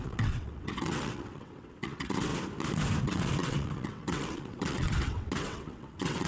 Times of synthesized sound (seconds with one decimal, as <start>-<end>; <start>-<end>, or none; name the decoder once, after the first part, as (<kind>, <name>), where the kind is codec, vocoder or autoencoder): 0.0-2.3 (vocoder, WaveNeXt); 3.0-6.3